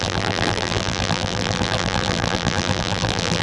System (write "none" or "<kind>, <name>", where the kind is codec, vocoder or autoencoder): vocoder, BigVGAN v2